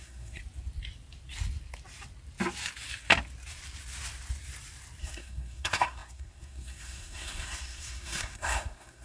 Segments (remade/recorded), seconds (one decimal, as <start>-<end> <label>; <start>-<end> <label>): 0.0-0.4 remade; 0.4-5.0 recorded; 5.0-9.0 remade